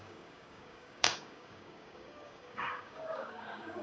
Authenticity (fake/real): fake